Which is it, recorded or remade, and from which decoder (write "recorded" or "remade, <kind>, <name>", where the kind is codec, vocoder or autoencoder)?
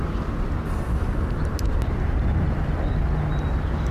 recorded